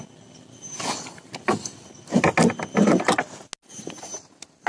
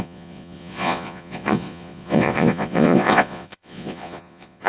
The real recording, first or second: first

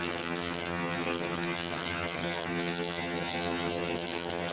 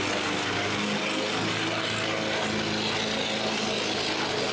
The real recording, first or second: second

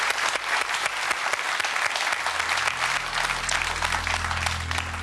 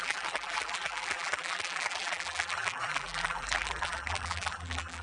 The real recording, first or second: first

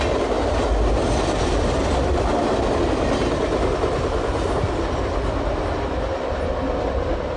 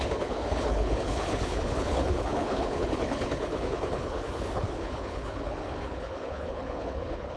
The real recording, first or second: first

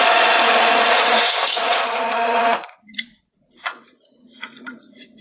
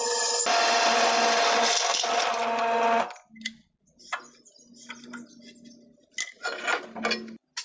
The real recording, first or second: second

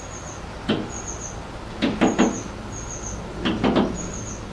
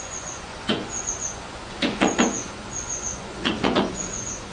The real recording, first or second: first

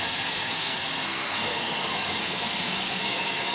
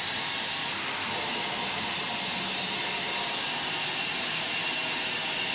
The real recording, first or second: second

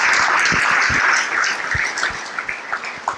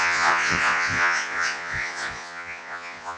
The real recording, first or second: first